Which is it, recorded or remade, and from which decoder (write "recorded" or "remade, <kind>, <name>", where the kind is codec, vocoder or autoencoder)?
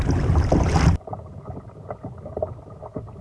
recorded